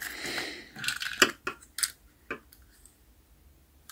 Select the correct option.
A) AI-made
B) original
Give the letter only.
B